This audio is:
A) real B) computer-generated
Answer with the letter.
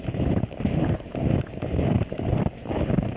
A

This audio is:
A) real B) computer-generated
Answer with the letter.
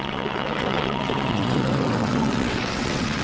B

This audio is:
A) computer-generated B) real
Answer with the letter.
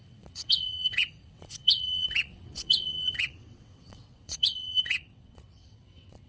A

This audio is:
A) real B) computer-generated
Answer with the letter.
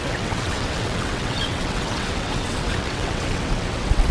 B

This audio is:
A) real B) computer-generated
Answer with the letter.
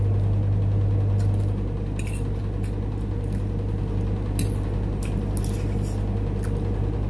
A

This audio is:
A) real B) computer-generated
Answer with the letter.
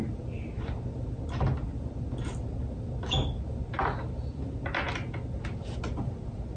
A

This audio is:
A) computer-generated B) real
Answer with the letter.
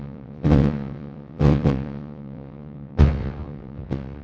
A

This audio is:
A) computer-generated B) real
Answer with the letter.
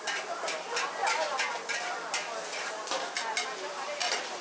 B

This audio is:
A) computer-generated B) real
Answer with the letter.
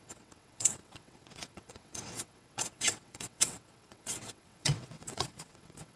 A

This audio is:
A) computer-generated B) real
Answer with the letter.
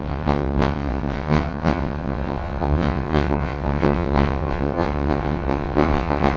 A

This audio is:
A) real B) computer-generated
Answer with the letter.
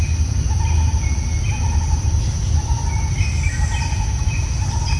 A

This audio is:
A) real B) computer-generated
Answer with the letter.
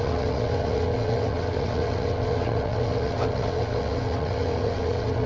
B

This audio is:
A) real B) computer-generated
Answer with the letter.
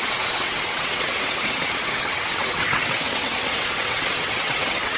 B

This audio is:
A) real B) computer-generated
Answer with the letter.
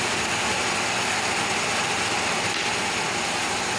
A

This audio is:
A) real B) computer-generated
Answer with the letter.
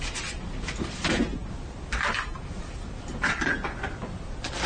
A